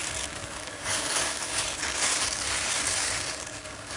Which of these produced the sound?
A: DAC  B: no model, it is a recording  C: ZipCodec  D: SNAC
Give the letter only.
A